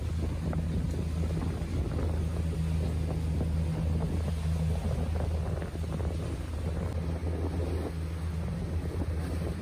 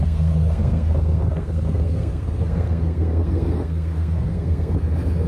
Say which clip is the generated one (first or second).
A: second